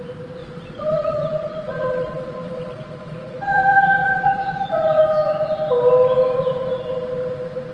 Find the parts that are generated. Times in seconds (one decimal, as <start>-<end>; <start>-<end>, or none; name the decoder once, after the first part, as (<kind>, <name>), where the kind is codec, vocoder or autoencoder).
0.4-5.0 (vocoder, Vocos)